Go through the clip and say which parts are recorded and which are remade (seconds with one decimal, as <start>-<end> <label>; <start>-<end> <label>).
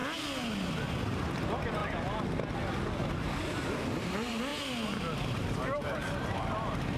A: 0.0-7.0 recorded